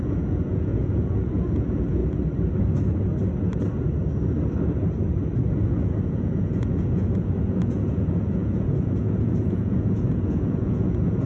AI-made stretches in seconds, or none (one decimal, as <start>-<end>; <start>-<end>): 0.0-2.0; 5.5-11.3